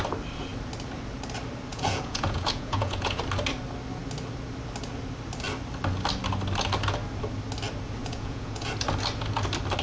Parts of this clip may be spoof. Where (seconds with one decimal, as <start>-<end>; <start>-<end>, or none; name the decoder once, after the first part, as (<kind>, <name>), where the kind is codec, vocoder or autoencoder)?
1.7-3.2 (vocoder, Vocos); 8.0-8.7